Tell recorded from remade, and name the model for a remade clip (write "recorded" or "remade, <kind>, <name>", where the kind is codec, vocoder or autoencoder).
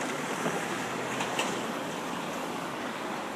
remade, codec, DAC